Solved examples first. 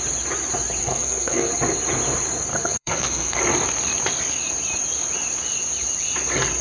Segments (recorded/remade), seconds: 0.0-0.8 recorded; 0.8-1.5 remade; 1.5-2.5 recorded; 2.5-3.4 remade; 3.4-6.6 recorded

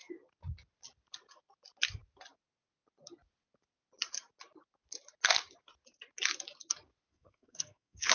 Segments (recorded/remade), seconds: 0.0-7.1 recorded; 7.1-8.1 remade

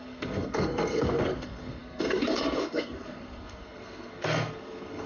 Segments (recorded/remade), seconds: 0.0-5.1 remade

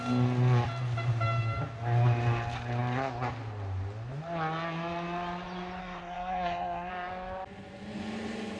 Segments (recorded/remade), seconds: 0.0-5.8 recorded; 5.8-6.9 remade; 6.9-8.6 recorded

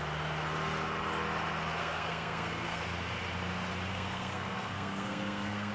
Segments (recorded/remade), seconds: 0.0-1.8 recorded; 1.8-2.8 remade; 2.8-3.9 recorded; 3.9-5.7 remade